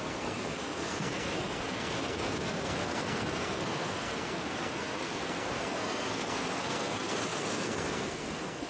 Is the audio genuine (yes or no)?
no